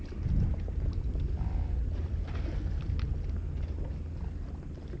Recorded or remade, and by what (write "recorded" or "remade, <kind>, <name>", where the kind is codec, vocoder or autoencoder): recorded